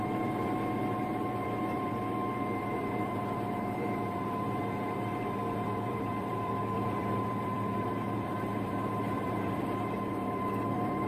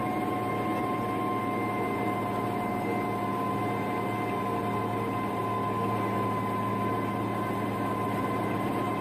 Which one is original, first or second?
second